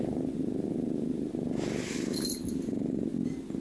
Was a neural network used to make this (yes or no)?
no